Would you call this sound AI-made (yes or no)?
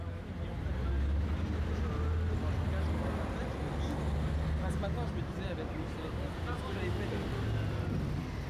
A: no